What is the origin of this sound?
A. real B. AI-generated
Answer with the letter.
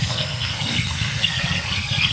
B